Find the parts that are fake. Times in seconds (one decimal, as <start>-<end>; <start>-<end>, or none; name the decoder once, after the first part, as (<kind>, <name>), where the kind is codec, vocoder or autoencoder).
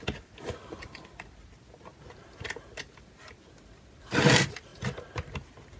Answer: none